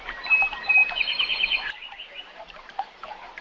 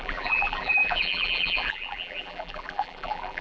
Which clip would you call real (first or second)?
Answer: first